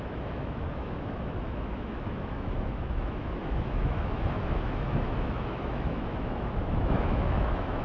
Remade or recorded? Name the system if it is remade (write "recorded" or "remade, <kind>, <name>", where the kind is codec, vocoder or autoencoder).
remade, autoencoder, DAC-VAE